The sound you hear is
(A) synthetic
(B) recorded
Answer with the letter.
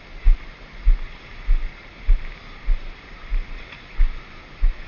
B